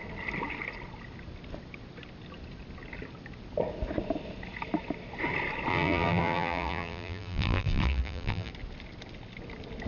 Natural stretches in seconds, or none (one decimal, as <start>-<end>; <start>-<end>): 0.0-5.7; 8.5-9.9